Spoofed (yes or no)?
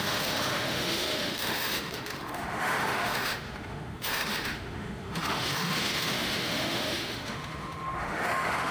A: yes